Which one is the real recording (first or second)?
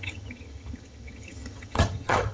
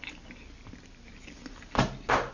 second